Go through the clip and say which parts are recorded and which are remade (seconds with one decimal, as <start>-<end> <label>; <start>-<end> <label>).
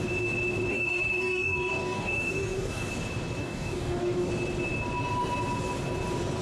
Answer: 0.0-0.7 recorded; 0.7-2.9 remade; 2.9-3.4 recorded; 3.4-4.3 remade; 4.3-6.4 recorded